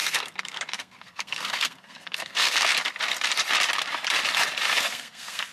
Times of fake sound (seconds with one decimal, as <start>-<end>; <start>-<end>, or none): 0.0-2.7; 4.8-5.5